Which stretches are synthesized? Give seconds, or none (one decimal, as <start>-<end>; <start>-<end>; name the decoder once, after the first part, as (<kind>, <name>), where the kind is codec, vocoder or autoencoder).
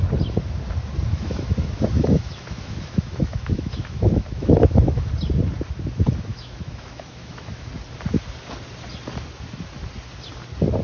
1.1-5.1 (autoencoder, DAC-VAE); 6.3-7.7